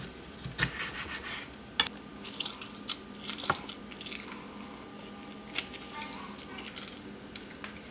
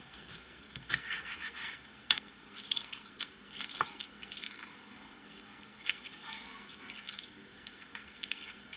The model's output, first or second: second